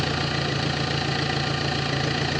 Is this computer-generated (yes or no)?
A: no